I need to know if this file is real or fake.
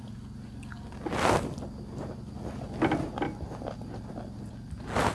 real